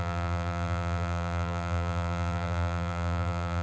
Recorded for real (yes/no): no